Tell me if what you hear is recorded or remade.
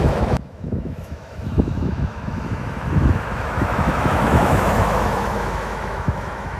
remade